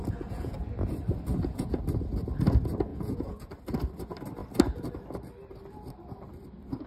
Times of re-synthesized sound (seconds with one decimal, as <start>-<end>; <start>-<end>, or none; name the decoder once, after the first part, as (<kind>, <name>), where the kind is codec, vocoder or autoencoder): 0.0-0.5 (vocoder, Vocos); 1.3-1.8; 2.9-3.5